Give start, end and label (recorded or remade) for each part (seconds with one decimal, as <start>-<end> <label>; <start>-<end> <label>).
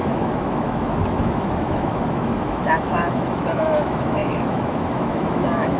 0.0-5.8 remade